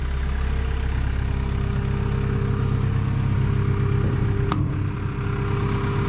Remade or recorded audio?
recorded